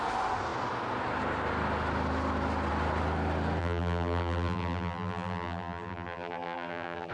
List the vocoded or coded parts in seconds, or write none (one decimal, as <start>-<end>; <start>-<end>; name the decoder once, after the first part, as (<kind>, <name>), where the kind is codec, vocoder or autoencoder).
3.6-7.1 (vocoder, BigVGAN v2)